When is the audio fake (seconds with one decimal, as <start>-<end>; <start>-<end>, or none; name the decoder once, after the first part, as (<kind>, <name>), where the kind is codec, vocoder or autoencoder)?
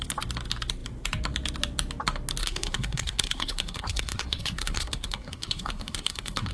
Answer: 2.4-6.5 (codec, SNAC)